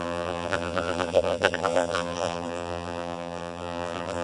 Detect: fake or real fake